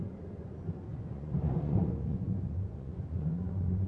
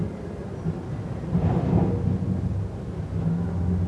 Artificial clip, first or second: first